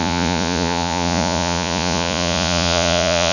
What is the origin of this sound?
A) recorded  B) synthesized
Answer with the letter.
B